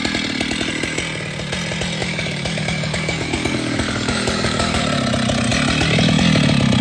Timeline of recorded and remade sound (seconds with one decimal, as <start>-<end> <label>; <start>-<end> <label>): 0.0-2.0 recorded; 2.0-4.8 remade; 4.8-6.8 recorded